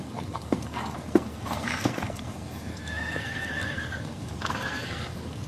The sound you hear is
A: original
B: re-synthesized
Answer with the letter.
B